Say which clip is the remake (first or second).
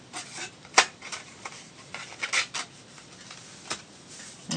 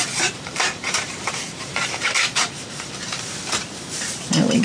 second